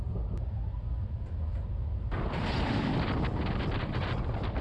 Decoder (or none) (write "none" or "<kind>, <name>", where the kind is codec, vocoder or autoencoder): none